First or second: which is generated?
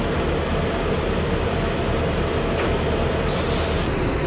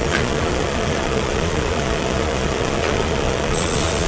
second